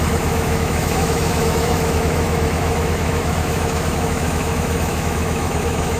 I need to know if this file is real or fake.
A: fake